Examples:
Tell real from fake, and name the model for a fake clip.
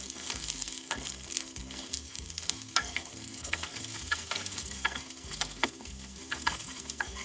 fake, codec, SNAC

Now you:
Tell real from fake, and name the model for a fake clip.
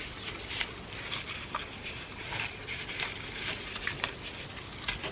real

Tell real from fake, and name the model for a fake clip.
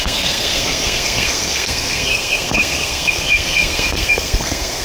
fake, codec, SNAC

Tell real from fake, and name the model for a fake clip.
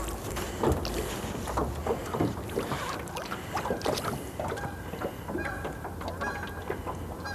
real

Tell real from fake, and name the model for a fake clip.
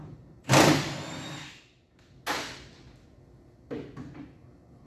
real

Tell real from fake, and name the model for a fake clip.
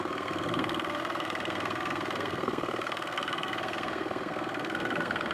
fake, codec, SNAC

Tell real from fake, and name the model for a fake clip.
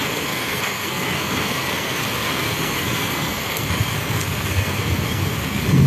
fake, codec, SNAC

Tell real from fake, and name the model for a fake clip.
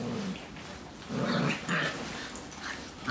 real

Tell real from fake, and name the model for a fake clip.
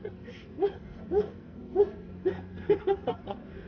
fake, codec, SNAC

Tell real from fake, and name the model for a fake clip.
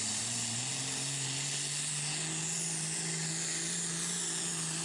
real